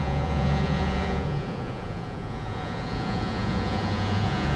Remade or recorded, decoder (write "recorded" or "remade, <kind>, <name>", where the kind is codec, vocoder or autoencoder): remade, vocoder, Vocos